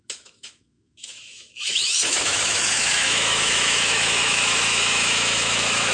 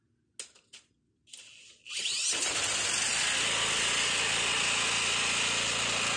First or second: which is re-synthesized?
first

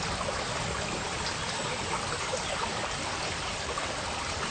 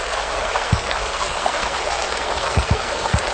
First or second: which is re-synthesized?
second